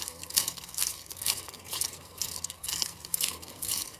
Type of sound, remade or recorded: remade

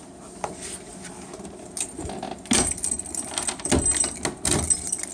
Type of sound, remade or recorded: recorded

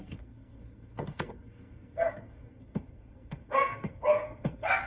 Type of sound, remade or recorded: remade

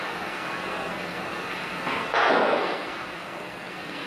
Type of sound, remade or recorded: remade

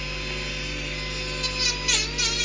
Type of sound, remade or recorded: recorded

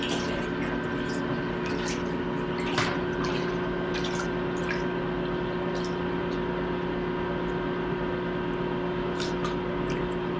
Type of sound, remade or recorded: recorded